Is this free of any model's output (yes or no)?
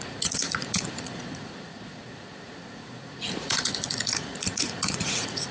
no